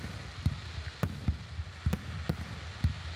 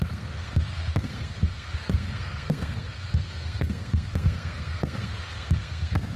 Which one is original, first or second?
first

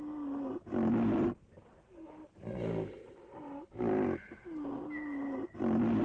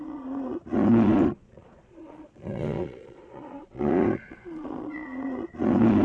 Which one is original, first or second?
first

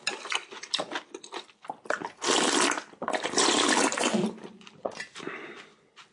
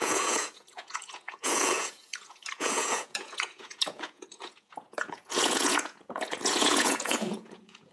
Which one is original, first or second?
first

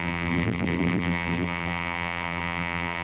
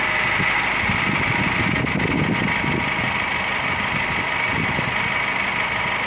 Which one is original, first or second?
second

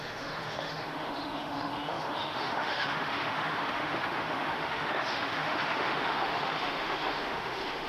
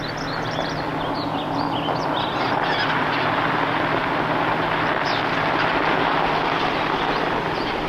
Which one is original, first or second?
second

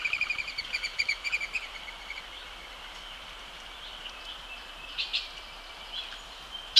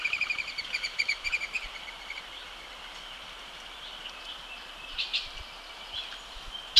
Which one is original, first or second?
first